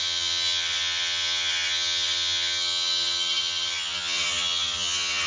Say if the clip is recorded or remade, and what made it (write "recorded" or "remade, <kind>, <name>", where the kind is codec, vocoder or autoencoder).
remade, vocoder, HiFi-GAN